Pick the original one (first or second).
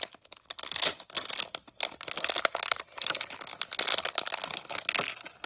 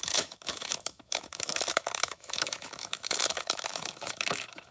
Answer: first